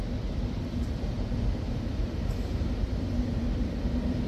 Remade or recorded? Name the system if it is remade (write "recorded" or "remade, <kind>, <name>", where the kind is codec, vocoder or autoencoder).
remade, vocoder, BigVGAN v2